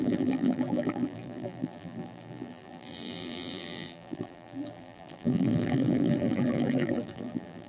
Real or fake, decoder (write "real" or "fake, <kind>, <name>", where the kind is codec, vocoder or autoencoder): fake, vocoder, BigVGAN v2